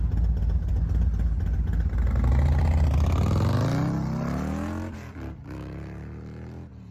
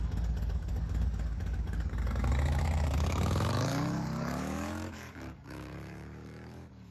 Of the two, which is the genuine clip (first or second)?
first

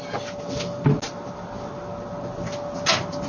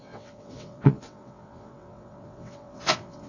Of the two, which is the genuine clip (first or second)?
first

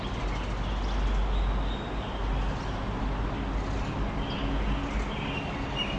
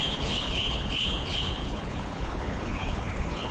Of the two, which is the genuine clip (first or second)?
first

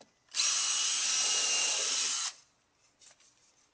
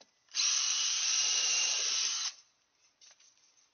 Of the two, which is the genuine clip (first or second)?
first